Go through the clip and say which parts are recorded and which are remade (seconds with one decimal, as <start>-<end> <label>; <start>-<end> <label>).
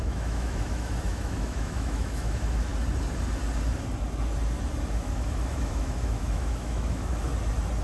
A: 0.0-2.7 remade; 2.7-4.9 recorded; 4.9-7.3 remade; 7.3-7.8 recorded